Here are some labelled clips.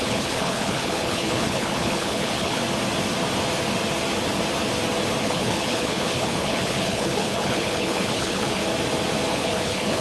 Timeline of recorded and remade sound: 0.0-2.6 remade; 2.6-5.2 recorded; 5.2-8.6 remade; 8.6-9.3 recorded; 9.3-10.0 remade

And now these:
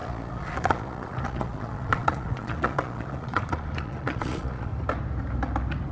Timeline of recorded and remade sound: 0.0-4.7 remade; 4.7-5.9 recorded

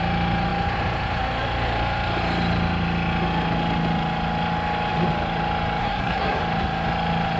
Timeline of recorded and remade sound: 0.0-5.8 recorded; 5.8-6.4 remade; 6.4-7.4 recorded

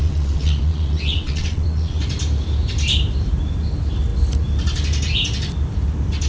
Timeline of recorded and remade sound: 0.0-2.0 remade; 2.0-6.3 recorded